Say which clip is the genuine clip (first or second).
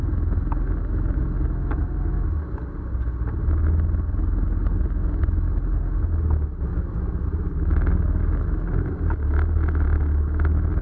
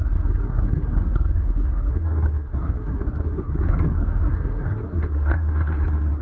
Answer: first